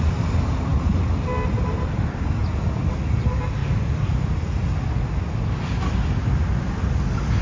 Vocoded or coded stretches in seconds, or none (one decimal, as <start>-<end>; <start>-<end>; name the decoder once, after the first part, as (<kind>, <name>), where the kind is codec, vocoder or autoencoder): 3.6-4.1 (vocoder, BigVGAN v2)